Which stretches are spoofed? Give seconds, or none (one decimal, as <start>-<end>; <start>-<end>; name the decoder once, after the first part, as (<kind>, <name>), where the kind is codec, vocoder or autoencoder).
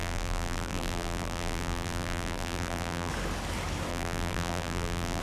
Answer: 0.0-3.1 (vocoder, BigVGAN v2); 3.9-5.2